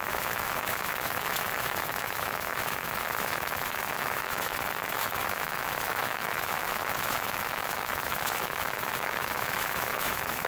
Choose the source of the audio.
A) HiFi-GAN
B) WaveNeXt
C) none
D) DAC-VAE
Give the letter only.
D